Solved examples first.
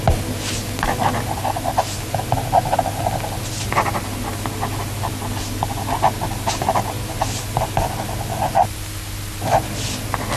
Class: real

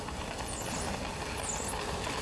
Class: real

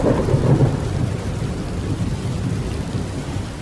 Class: real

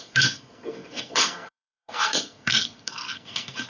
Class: fake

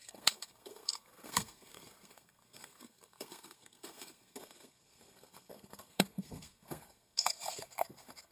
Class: fake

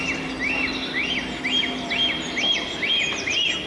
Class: real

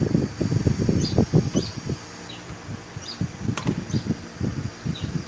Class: real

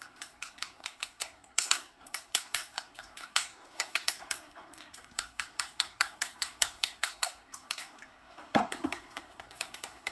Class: fake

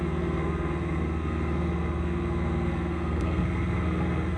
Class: fake